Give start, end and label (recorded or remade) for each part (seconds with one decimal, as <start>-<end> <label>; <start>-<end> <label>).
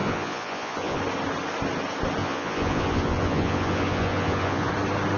0.0-1.0 remade; 1.0-2.2 recorded; 2.2-4.7 remade; 4.7-5.2 recorded